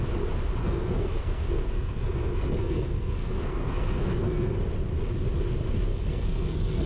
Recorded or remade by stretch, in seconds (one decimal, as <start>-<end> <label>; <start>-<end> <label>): 0.0-0.6 recorded; 0.6-4.6 remade; 4.6-5.9 recorded; 5.9-6.9 remade